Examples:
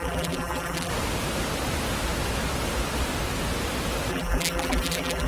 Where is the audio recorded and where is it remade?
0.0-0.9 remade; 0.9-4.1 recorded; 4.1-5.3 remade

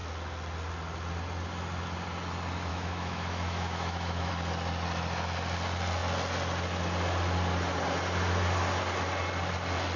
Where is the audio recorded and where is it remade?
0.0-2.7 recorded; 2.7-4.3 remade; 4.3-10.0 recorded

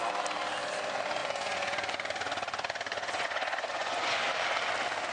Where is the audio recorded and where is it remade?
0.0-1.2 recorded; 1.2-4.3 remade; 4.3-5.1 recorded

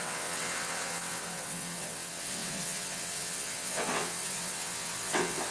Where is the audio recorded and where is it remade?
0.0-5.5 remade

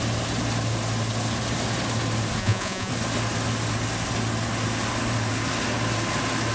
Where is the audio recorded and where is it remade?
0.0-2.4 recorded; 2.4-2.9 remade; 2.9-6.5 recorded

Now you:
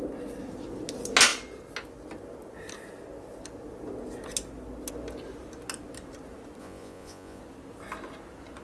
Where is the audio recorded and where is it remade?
0.0-6.6 recorded; 6.6-7.4 remade; 7.4-8.6 recorded